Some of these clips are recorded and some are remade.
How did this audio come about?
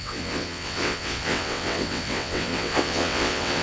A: remade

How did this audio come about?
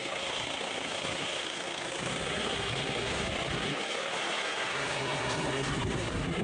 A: remade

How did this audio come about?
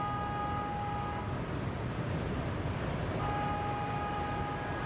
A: recorded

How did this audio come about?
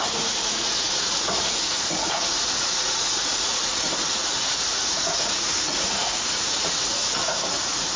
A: remade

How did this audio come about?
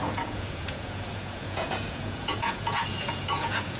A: remade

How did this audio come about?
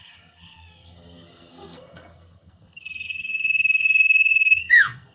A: remade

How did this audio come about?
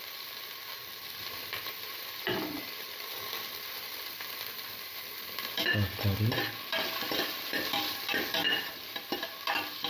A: remade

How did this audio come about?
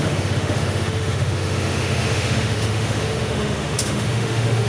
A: remade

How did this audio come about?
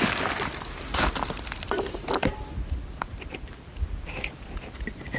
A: recorded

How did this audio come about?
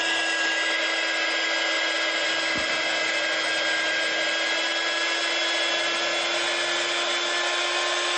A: recorded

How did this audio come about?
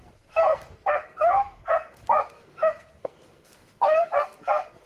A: remade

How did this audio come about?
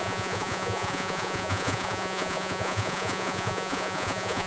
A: remade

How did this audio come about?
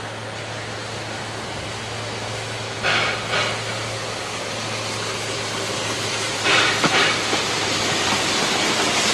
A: recorded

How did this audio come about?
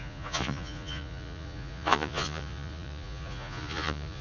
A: remade